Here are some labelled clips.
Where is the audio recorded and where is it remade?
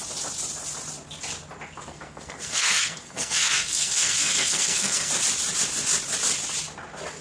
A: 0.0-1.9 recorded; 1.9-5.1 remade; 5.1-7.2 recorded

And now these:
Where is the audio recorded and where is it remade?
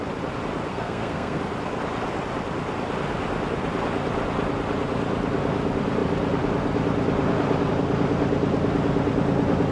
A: 0.0-0.7 recorded; 0.7-1.4 remade; 1.4-9.7 recorded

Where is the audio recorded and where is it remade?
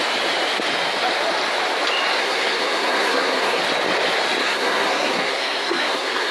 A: 0.0-2.2 recorded; 2.2-3.6 remade; 3.6-4.4 recorded; 4.4-6.3 remade